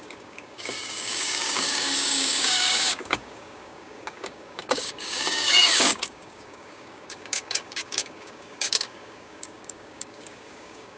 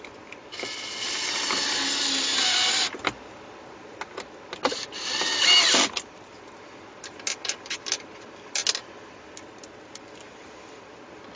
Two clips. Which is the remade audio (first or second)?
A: first